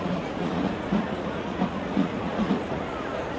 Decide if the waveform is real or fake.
fake